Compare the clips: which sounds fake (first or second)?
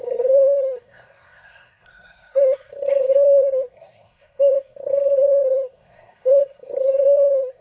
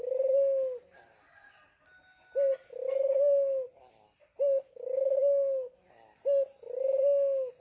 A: first